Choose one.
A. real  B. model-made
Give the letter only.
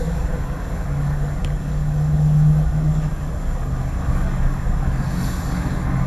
B